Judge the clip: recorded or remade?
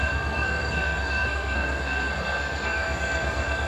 remade